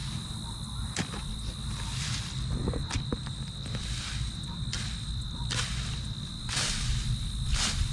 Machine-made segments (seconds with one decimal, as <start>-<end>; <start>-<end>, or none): none